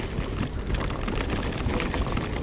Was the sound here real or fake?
real